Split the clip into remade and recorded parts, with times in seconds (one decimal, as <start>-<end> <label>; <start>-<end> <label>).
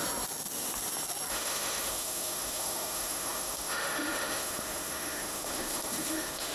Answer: 0.0-1.3 recorded; 1.3-6.5 remade